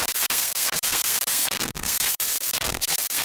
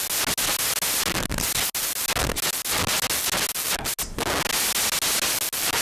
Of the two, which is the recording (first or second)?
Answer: second